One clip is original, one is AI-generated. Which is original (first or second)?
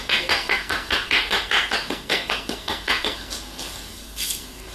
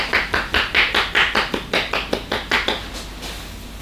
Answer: second